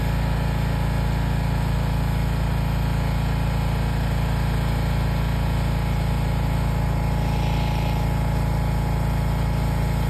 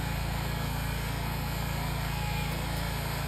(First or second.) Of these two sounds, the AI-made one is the second